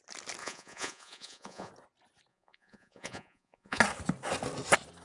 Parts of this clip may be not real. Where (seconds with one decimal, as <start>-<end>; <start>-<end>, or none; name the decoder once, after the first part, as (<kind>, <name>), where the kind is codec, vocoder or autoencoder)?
0.4-1.7 (vocoder, Vocos); 2.3-3.8